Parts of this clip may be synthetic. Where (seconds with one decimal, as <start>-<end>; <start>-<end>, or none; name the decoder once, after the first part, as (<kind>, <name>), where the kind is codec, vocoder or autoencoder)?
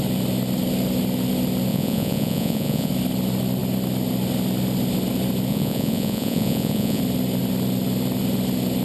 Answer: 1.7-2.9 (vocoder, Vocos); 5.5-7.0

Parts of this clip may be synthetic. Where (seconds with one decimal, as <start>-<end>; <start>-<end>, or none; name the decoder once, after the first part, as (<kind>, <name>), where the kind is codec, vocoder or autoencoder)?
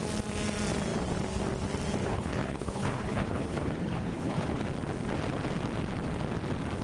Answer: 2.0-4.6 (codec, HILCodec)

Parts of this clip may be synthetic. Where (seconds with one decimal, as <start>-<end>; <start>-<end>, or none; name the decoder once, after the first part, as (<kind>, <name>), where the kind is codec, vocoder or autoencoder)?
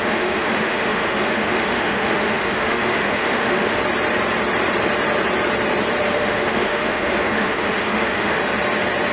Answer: 0.0-3.8 (autoencoder, DAC-VAE); 6.1-8.4